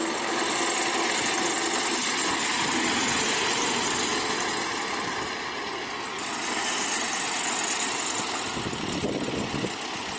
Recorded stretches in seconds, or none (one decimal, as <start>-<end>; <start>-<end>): 0.0-10.2